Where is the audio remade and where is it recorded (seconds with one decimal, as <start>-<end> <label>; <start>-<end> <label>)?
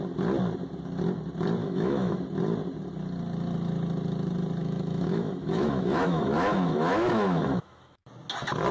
0.0-1.6 recorded; 1.6-2.2 remade; 2.2-4.6 recorded; 4.6-8.1 remade; 8.1-8.7 recorded